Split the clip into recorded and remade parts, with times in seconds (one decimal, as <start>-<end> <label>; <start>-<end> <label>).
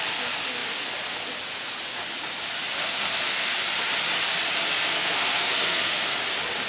0.0-2.8 recorded; 2.8-3.5 remade; 3.5-4.9 recorded; 4.9-6.0 remade; 6.0-6.7 recorded